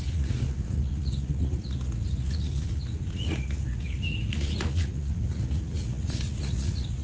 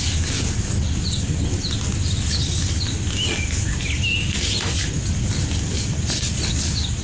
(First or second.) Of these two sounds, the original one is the second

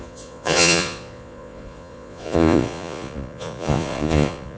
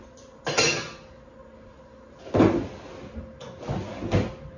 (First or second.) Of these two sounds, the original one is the second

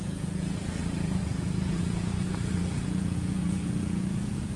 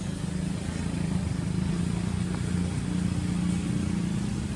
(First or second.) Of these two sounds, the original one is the second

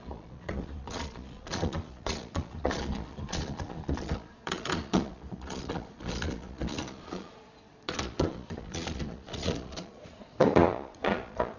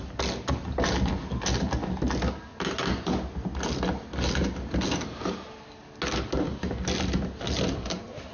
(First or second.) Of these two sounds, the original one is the second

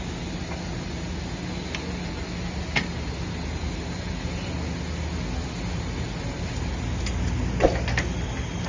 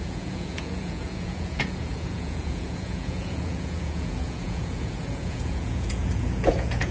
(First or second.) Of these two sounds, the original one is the first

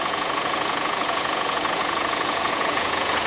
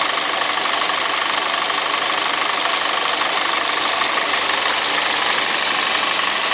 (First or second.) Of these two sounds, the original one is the second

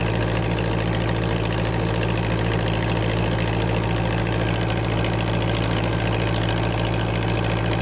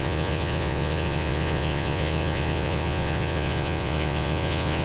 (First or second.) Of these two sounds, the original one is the first